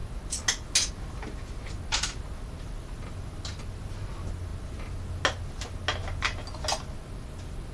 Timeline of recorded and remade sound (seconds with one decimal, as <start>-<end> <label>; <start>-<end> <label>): 0.0-7.7 recorded

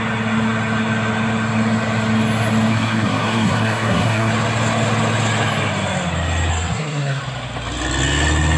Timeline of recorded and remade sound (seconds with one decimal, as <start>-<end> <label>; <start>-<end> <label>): 0.0-2.7 recorded; 2.7-4.3 remade; 4.3-6.5 recorded; 6.5-7.2 remade; 7.2-8.6 recorded